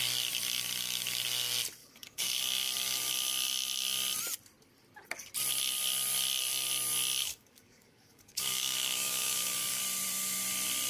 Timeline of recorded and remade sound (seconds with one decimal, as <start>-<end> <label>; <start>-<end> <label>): 0.0-1.8 recorded; 1.8-2.4 remade; 2.4-7.2 recorded; 7.2-9.8 remade; 9.8-10.9 recorded